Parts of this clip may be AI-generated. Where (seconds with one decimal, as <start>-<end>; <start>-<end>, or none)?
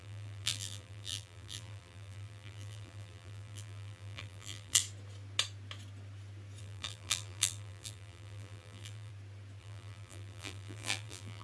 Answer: 0.0-4.8; 6.6-9.1; 9.6-11.4